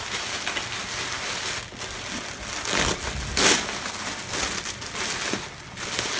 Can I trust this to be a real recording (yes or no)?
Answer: yes